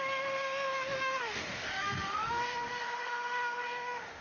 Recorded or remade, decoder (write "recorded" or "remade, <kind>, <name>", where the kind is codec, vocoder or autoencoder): remade, autoencoder, DAC-VAE